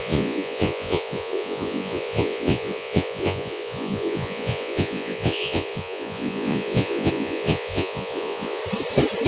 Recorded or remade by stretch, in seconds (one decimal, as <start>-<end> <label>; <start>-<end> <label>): 0.0-8.6 remade; 8.6-9.3 recorded